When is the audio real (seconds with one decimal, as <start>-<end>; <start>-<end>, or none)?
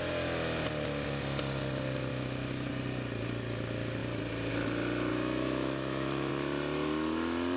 0.0-2.1; 2.7-5.1; 6.3-7.6